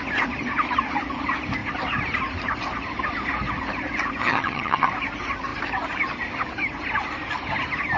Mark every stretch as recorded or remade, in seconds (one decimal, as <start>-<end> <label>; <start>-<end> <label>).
0.0-4.2 recorded; 4.2-4.9 remade; 4.9-8.0 recorded